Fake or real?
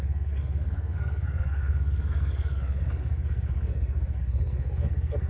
fake